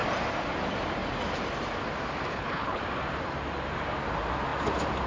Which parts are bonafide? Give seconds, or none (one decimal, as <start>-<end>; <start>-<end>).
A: 0.0-2.3; 2.8-5.1